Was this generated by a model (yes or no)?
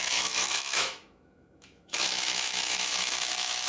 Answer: yes